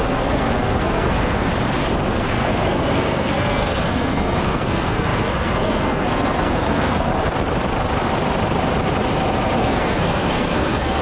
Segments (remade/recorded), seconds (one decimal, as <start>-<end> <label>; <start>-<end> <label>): 0.0-1.5 remade; 1.5-2.0 recorded; 2.0-7.1 remade; 7.1-9.6 recorded; 9.6-11.0 remade